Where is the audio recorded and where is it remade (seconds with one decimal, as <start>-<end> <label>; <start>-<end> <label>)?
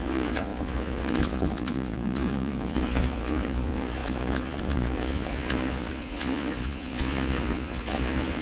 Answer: 0.0-8.4 remade